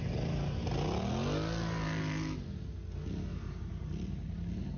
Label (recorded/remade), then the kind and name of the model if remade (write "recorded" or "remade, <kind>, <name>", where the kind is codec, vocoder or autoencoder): recorded